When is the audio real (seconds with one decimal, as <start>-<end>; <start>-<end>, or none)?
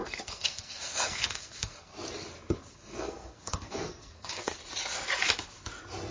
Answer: 1.9-2.7; 4.6-6.1